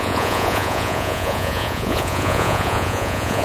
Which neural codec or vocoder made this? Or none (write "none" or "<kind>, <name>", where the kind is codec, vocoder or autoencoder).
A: vocoder, Vocos